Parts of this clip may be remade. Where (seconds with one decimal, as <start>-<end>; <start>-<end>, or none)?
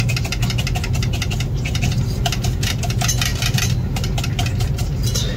none